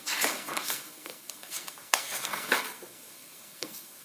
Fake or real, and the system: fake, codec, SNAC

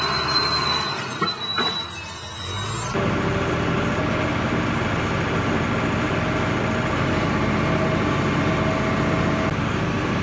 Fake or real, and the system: real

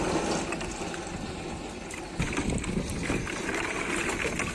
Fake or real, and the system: real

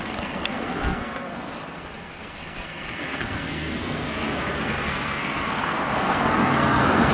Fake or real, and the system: fake, codec, SNAC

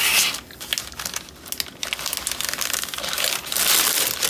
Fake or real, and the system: real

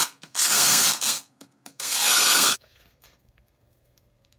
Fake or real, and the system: fake, codec, SNAC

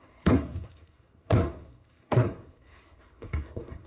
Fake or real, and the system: fake, codec, SNAC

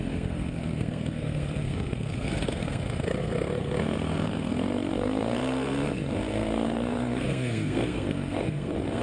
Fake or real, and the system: fake, codec, SNAC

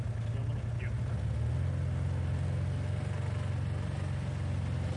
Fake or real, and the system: real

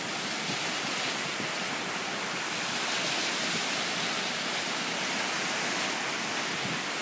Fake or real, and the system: real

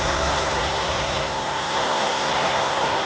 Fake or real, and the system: fake, codec, SNAC